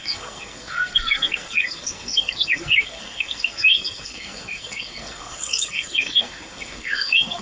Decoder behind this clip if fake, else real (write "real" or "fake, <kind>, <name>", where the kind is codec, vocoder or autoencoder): fake, codec, SNAC